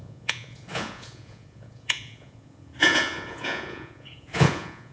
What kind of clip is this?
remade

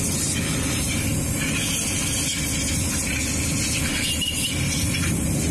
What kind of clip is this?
recorded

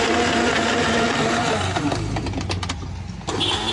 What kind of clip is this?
recorded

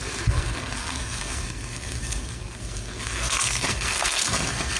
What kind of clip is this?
remade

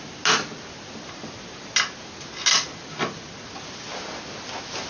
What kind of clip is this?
recorded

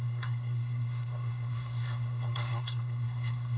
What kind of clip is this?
remade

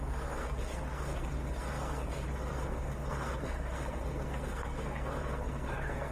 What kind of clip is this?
remade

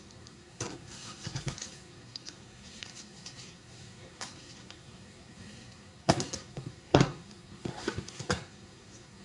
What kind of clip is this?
remade